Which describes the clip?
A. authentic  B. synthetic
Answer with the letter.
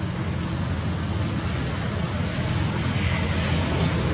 A